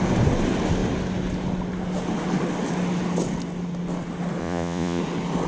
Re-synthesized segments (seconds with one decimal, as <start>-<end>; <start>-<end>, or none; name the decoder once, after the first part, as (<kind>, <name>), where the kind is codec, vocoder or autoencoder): 4.4-5.0 (vocoder, Vocos)